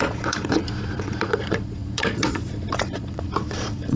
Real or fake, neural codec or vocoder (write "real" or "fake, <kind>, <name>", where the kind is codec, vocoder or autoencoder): fake, vocoder, Vocos